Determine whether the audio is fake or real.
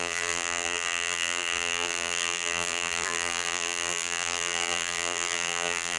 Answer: fake